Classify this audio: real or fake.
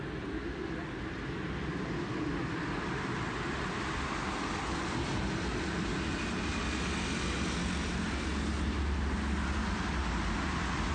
real